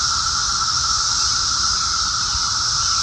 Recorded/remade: remade